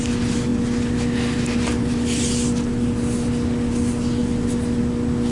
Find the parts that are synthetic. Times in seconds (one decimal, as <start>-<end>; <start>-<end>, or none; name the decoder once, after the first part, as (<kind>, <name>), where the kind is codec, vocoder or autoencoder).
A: none